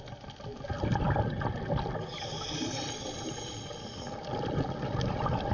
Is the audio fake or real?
real